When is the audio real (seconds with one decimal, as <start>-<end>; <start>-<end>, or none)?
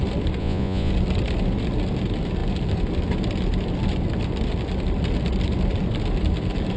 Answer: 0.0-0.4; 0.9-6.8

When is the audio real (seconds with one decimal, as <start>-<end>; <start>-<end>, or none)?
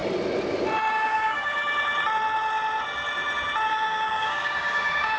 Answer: 0.0-0.9; 1.6-3.7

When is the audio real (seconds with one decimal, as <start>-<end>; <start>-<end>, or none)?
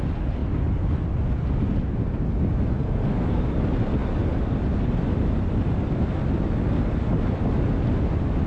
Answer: 0.0-2.7; 3.4-8.5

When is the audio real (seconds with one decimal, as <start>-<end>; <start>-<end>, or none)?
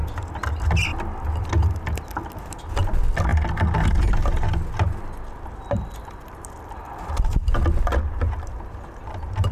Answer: 0.0-9.5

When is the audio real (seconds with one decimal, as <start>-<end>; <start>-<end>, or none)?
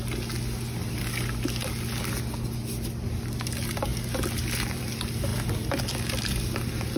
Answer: 0.0-3.9; 4.8-5.3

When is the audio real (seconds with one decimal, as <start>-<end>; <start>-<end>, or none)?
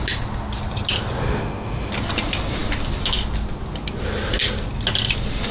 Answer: 0.0-1.2; 1.9-5.5